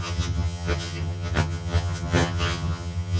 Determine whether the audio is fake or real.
fake